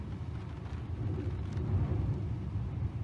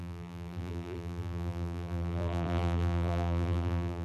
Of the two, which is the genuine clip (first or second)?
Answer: first